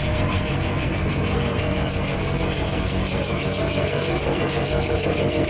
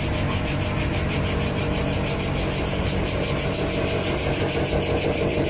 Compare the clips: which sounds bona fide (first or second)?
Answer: second